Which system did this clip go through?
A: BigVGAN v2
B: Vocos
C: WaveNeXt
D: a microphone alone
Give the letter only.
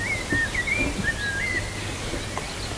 D